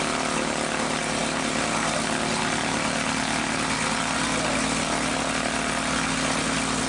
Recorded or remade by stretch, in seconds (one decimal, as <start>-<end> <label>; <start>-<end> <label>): 0.0-6.9 recorded